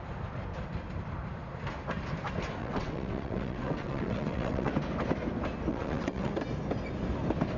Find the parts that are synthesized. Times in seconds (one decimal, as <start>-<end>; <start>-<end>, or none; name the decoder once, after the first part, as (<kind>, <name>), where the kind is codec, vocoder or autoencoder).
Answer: 2.6-4.7 (vocoder, WaveNeXt); 5.7-6.3